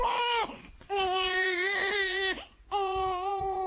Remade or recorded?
remade